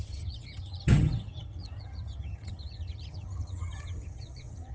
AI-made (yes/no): yes